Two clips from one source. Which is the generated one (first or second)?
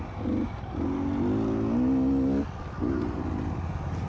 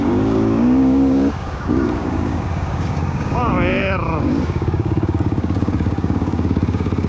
second